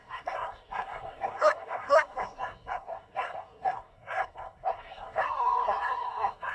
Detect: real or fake fake